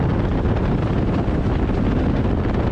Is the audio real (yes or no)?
yes